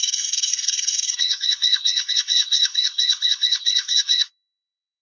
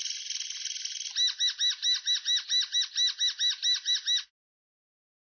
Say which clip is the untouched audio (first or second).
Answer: second